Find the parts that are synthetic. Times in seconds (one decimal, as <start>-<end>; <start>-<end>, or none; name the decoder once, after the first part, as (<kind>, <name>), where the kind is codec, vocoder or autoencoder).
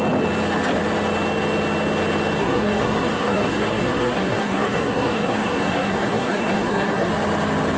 2.4-7.1 (codec, SNAC)